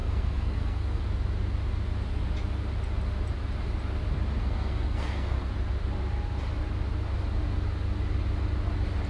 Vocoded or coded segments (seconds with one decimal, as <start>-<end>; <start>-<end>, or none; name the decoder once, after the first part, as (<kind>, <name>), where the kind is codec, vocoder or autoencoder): 0.0-1.0 (codec, SNAC); 4.4-5.5